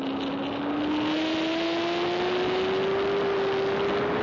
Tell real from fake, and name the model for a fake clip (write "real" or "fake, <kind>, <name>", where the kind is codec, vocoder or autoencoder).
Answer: real